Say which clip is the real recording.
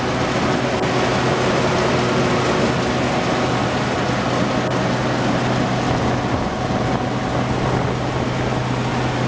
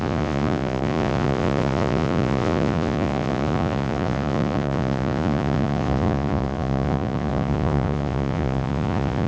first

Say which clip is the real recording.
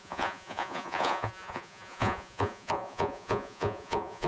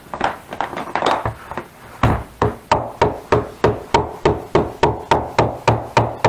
second